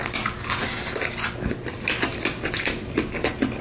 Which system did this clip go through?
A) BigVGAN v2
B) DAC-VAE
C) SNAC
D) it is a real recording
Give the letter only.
D